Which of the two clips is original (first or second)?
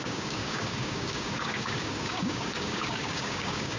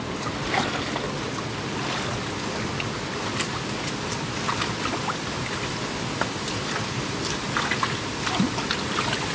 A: second